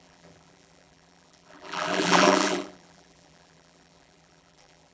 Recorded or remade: remade